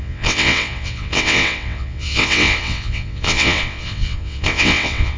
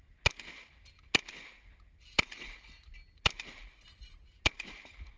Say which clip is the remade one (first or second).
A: first